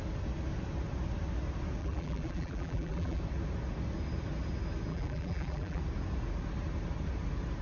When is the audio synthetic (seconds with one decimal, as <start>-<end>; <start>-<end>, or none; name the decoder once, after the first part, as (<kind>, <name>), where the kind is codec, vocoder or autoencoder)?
1.8-3.2 (vocoder, BigVGAN v2); 4.9-5.8